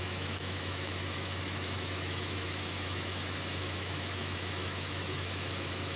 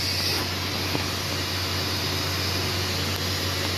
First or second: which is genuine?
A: second